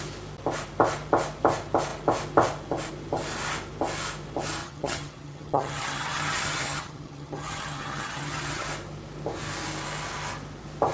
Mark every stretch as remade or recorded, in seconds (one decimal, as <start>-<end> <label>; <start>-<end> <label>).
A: 0.0-4.6 recorded; 4.6-8.7 remade; 8.7-10.9 recorded